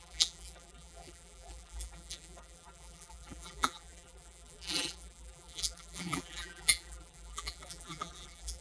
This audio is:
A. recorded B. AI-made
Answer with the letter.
B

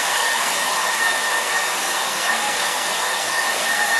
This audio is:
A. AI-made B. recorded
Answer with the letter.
A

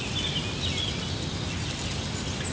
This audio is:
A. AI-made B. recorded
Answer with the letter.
B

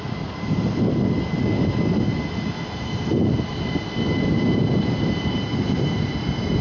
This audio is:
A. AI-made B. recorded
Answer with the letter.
B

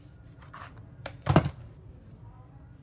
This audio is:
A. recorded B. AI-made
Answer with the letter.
B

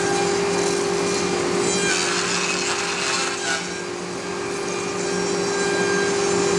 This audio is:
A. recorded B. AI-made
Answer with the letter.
A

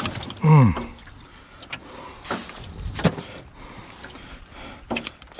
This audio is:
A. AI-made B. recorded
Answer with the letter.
B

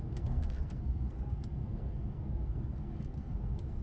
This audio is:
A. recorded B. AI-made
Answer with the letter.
B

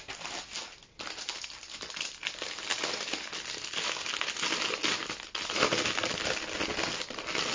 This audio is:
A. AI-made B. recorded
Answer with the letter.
B